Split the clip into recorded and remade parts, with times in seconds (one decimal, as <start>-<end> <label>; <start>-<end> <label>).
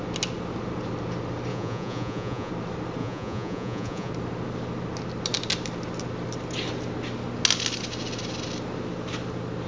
0.0-1.5 recorded; 1.5-2.5 remade; 2.5-3.0 recorded; 3.0-4.1 remade; 4.1-9.7 recorded